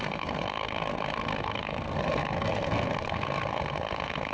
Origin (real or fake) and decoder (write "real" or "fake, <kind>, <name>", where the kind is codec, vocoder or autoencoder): fake, codec, SNAC